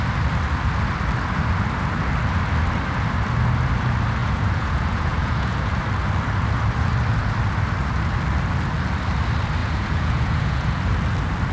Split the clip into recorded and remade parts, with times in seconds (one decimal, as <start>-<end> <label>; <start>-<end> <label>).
0.0-4.2 recorded; 4.2-5.7 remade; 5.7-9.6 recorded; 9.6-10.8 remade; 10.8-11.5 recorded

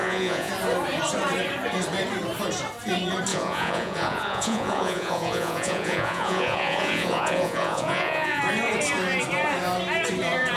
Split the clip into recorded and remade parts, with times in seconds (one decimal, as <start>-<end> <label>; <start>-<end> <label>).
0.0-0.5 remade; 0.5-3.3 recorded; 3.3-8.4 remade; 8.4-10.6 recorded

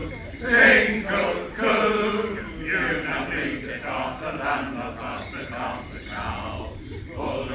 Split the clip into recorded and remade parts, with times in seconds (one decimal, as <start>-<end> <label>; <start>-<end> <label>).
0.0-7.5 recorded

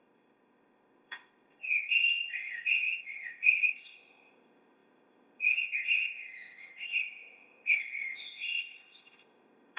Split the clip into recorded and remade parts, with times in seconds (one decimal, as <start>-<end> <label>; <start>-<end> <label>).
0.0-9.8 remade

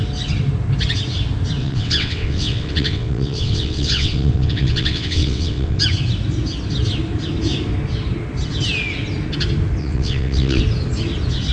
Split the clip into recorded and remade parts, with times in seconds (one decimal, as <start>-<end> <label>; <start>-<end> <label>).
0.0-1.6 recorded; 1.6-5.8 remade; 5.8-9.8 recorded; 9.8-10.6 remade; 10.6-11.5 recorded

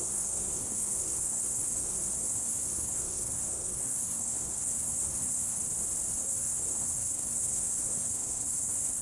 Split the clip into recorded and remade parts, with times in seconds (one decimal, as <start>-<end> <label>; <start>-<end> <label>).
0.0-5.6 remade; 5.6-6.1 recorded; 6.1-9.0 remade

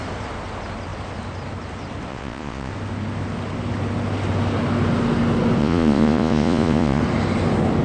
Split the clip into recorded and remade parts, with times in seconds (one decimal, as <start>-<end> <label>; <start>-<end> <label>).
0.0-2.1 recorded; 2.1-2.7 remade; 2.7-5.6 recorded; 5.6-7.0 remade; 7.0-7.8 recorded